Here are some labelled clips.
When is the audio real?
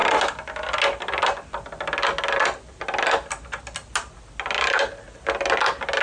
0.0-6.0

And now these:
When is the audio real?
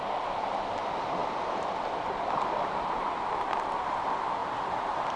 0.0-1.2; 2.8-5.2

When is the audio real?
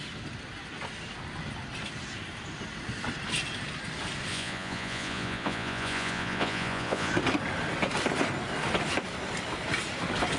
0.0-4.3; 7.1-10.4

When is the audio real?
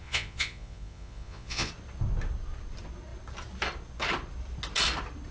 1.7-5.3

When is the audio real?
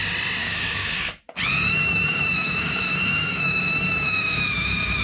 0.0-0.4; 1.2-1.7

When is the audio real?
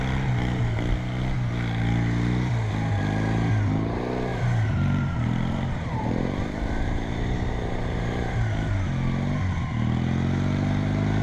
0.0-4.3; 8.3-11.2